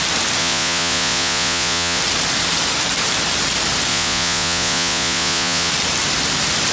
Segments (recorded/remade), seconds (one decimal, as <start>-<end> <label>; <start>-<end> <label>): 0.0-0.4 recorded; 0.4-2.0 remade; 2.0-3.9 recorded; 3.9-5.7 remade; 5.7-6.7 recorded